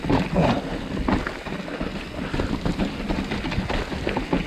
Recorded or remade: recorded